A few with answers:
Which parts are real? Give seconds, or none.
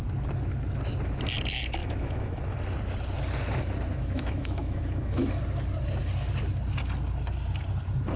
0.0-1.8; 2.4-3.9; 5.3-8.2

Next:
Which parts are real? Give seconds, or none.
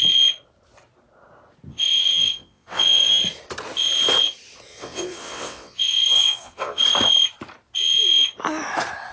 0.0-1.7; 3.2-4.7; 6.8-9.1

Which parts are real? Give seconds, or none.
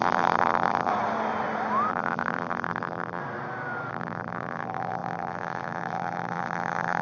0.9-1.9; 3.2-3.9